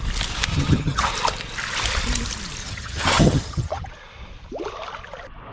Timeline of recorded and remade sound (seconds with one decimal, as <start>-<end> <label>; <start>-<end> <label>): 0.0-0.5 recorded; 0.5-1.1 remade; 1.1-2.6 recorded; 2.6-3.9 remade; 3.9-5.5 recorded